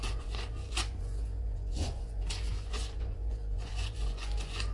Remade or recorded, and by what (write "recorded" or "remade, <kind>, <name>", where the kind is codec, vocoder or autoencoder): remade, vocoder, Vocos